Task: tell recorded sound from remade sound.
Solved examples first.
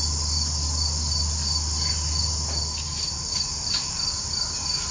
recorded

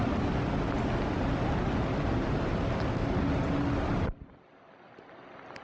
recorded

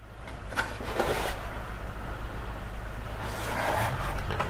recorded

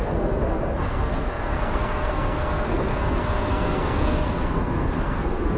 remade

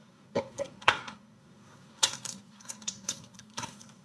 remade